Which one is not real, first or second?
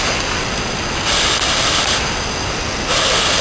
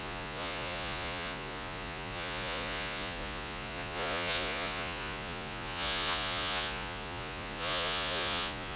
second